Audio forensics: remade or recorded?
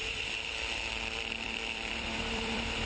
remade